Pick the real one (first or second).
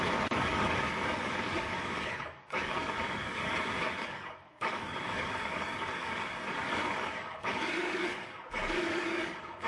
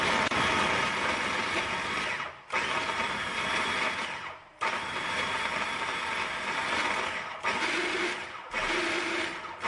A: second